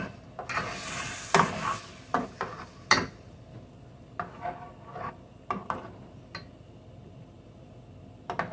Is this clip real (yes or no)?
yes